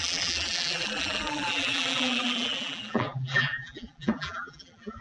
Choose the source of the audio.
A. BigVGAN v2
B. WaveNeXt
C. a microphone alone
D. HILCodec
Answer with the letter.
A